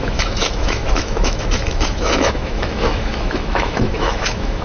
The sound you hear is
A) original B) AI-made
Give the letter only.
B